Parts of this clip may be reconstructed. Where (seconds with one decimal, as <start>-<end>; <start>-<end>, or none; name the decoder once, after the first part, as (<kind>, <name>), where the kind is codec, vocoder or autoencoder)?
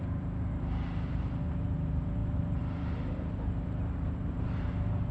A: 0.0-5.1 (vocoder, BigVGAN v2)